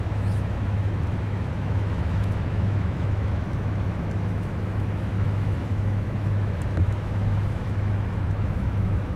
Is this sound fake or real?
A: fake